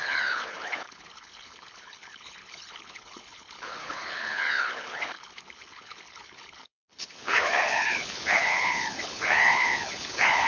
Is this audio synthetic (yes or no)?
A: yes